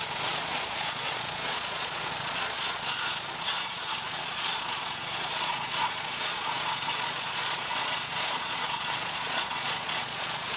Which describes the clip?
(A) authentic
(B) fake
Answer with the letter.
B